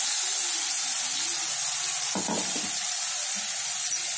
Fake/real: real